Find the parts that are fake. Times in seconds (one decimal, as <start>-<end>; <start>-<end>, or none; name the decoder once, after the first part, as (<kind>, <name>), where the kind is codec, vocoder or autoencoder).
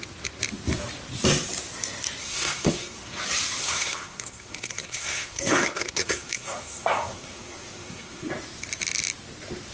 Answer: 2.2-3.2 (codec, SNAC); 3.6-8.3